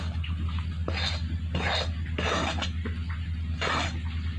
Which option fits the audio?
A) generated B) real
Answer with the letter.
B